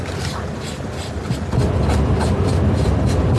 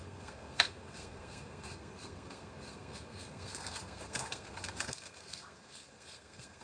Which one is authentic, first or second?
first